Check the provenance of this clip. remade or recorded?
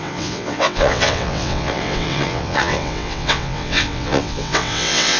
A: remade